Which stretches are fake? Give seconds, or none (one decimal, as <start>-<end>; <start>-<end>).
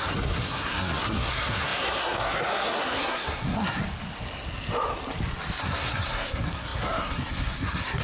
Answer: 0.0-3.8; 5.6-8.0